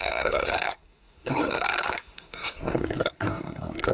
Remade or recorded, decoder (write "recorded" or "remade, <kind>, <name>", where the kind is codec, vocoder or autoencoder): remade, codec, SNAC